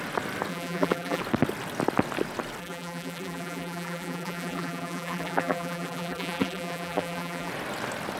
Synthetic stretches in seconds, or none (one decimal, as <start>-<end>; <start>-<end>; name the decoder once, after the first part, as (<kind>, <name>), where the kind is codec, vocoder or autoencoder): 0.5-1.2 (vocoder, BigVGAN v2); 2.6-7.5